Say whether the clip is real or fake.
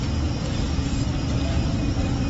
real